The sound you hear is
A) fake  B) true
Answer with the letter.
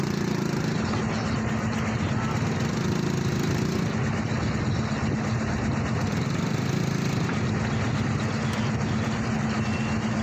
B